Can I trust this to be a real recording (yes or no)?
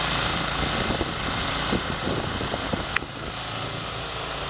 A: yes